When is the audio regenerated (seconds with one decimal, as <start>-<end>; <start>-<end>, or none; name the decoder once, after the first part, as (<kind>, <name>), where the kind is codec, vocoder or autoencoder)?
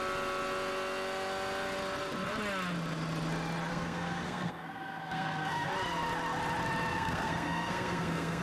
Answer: 3.7-5.7 (codec, SNAC); 6.9-8.4